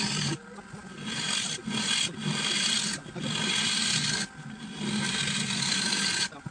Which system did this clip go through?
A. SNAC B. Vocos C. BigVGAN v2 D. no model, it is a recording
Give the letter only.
D